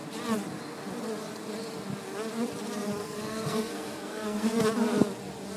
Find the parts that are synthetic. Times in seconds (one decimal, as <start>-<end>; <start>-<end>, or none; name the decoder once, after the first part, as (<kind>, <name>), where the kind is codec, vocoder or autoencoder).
3.0-4.6 (codec, SNAC)